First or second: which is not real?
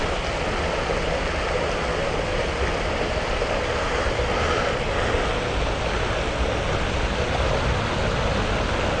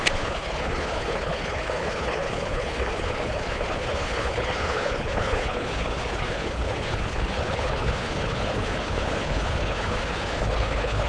second